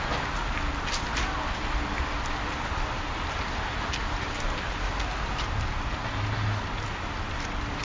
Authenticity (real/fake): real